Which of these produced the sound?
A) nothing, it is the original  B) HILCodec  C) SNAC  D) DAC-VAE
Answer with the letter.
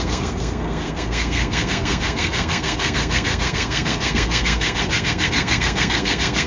C